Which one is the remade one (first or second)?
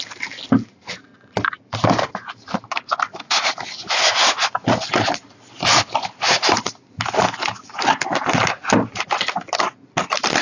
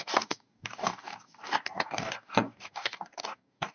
second